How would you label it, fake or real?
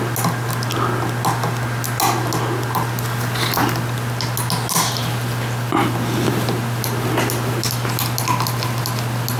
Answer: real